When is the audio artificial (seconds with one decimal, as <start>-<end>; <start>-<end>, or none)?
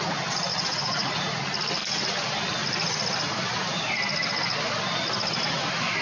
0.5-1.4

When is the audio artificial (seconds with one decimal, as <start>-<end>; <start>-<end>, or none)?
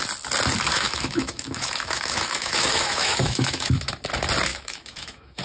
0.7-3.9; 4.5-5.4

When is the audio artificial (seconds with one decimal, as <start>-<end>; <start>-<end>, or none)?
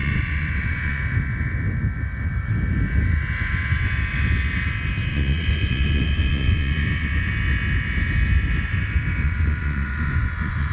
0.0-1.0; 5.1-7.3; 9.2-10.7